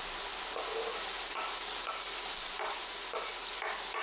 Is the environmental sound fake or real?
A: real